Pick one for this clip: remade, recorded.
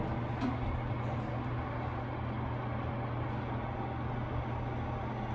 recorded